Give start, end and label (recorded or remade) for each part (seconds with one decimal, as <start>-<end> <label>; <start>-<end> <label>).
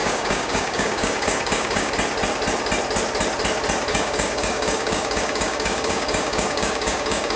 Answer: 0.0-1.9 remade; 1.9-3.9 recorded; 3.9-7.4 remade